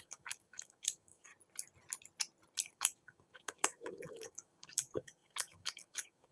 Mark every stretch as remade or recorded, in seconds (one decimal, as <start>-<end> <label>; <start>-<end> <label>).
0.0-1.3 remade; 1.3-2.7 recorded; 2.7-6.3 remade